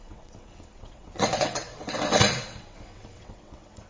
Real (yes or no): no